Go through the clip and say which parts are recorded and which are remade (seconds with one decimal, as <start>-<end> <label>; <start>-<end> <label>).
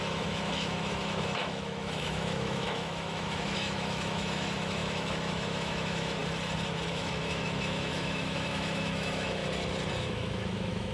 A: 0.0-6.2 remade; 6.2-6.9 recorded; 6.9-9.4 remade; 9.4-10.0 recorded; 10.0-10.9 remade